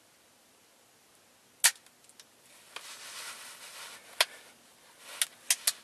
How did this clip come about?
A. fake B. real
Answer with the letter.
B